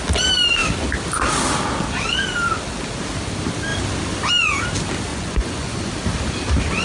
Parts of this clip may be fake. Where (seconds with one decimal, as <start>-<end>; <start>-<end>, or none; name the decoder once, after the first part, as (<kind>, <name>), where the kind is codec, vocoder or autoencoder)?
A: 5.1-5.9 (vocoder, Vocos)